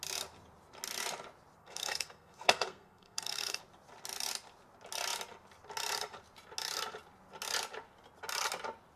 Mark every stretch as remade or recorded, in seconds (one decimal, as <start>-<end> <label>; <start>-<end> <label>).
0.0-1.6 recorded; 1.6-3.6 remade; 3.6-9.0 recorded